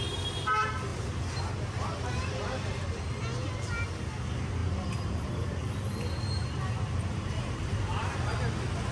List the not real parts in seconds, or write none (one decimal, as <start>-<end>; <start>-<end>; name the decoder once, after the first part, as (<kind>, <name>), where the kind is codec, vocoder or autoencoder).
4.6-7.8 (vocoder, BigVGAN v2)